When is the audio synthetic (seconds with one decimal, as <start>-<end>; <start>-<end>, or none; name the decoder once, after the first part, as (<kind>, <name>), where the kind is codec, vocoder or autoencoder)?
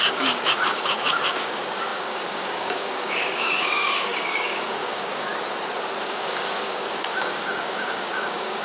0.0-5.3 (codec, DAC); 6.0-8.6